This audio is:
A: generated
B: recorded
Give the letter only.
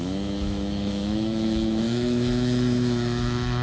A